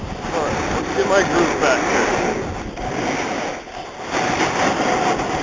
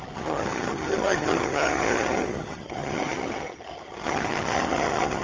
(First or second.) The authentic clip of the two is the first